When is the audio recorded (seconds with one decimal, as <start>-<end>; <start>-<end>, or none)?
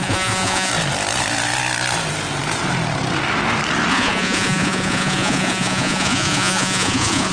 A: 0.7-3.9